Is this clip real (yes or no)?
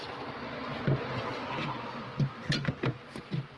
yes